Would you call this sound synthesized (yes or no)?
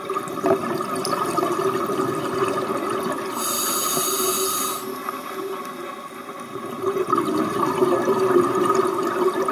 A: no